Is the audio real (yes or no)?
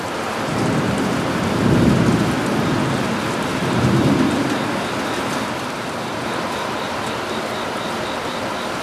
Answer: yes